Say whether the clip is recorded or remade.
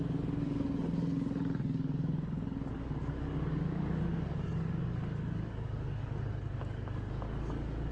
remade